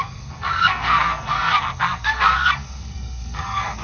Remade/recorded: remade